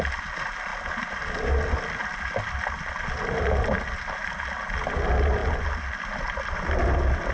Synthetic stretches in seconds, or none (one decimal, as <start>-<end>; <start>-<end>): none